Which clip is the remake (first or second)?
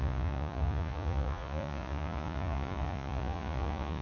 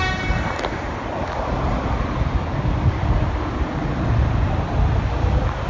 first